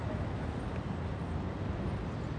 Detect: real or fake real